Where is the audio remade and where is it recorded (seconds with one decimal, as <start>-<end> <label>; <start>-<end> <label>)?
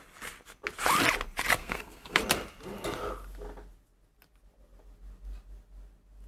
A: 0.0-1.6 recorded; 1.6-2.2 remade; 2.2-6.3 recorded